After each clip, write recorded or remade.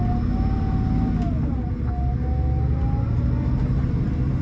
recorded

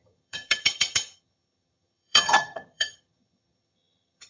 remade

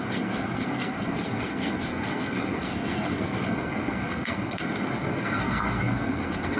remade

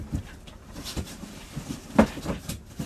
recorded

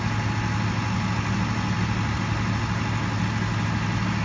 recorded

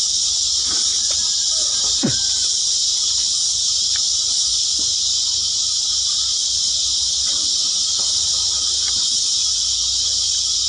remade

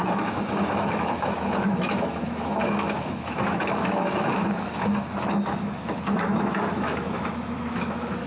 remade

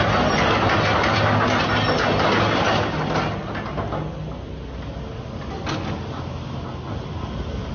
recorded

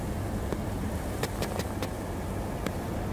recorded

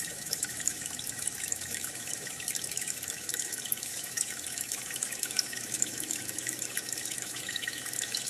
remade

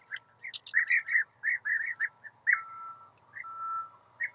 recorded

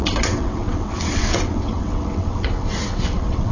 remade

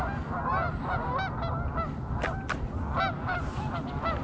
recorded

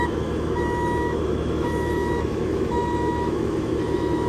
remade